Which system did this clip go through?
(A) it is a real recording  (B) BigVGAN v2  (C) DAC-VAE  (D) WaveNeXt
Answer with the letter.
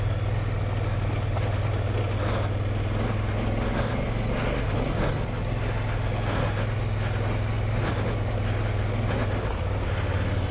A